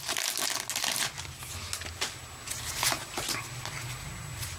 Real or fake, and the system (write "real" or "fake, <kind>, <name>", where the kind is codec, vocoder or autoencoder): real